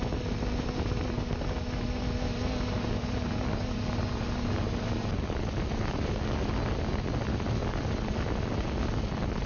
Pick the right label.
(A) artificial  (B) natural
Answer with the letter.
B